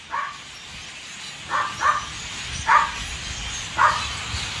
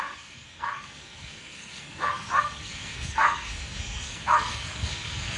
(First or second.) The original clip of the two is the first